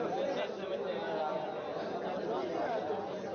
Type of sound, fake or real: real